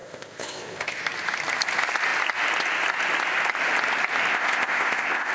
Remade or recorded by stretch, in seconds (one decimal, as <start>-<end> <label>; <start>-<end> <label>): 0.0-1.0 remade; 1.0-4.3 recorded; 4.3-5.3 remade